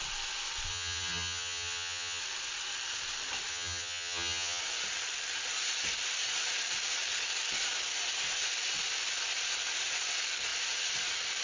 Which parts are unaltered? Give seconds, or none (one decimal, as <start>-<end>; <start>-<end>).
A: 0.0-0.7; 2.2-3.5; 4.6-11.4

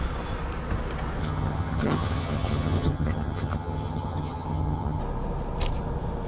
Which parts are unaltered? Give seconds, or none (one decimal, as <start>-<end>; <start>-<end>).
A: 0.0-1.2; 5.0-6.3

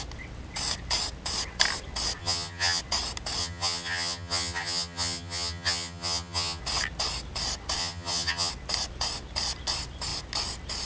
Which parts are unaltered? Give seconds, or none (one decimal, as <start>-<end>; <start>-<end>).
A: 0.0-2.2; 2.8-3.4; 6.6-7.8; 8.5-10.9

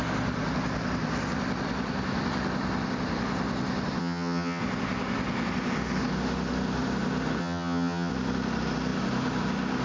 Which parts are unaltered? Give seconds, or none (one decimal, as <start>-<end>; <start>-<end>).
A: 0.0-4.0; 4.6-7.4; 8.1-9.8

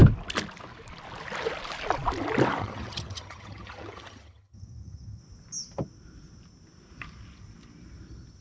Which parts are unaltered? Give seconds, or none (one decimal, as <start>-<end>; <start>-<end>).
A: 0.0-2.6; 5.2-8.4

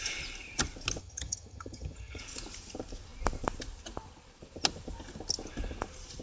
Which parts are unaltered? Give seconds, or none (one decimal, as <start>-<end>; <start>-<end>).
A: 0.0-1.0; 2.2-6.2

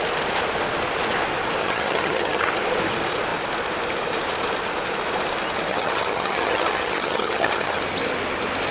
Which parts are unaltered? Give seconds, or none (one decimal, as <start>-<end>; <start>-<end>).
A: 0.0-1.6; 2.5-5.7; 7.8-8.7

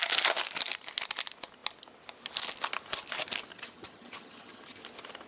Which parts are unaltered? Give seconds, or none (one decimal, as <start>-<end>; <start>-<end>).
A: 0.0-3.5; 4.8-5.3